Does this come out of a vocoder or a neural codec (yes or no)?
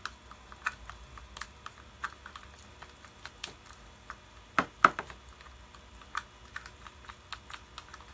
no